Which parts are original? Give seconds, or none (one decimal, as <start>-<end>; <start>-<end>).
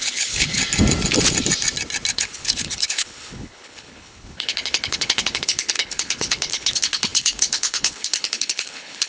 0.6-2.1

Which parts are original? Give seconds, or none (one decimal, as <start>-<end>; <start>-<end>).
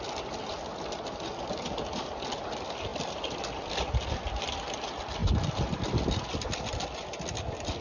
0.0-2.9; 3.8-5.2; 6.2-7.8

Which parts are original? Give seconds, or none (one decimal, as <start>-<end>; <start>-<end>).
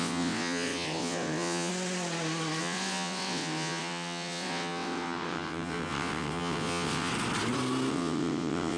1.7-2.6; 7.1-7.9